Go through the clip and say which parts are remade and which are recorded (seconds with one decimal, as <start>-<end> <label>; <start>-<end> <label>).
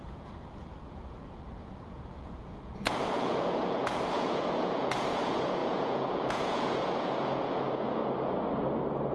0.0-8.0 remade; 8.0-9.1 recorded